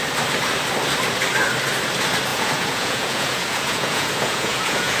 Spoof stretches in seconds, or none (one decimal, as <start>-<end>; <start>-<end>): 2.3-5.0